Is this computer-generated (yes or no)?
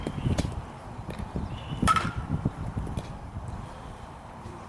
yes